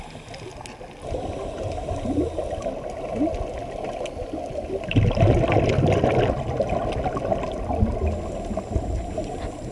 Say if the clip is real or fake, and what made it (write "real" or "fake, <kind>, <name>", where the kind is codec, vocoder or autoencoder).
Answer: real